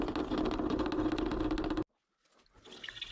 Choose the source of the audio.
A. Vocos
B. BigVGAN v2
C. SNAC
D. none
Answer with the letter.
D